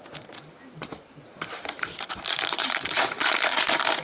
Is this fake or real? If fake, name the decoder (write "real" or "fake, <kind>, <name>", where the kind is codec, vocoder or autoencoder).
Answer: fake, vocoder, BigVGAN v2